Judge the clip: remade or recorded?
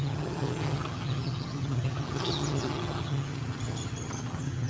remade